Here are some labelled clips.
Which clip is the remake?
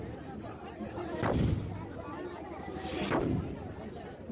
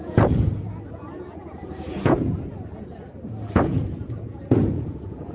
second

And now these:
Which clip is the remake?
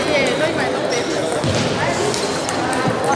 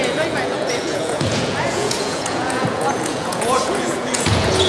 second